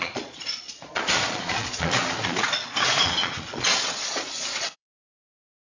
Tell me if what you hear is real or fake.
fake